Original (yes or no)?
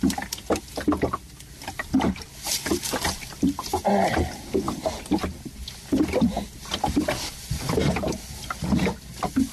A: yes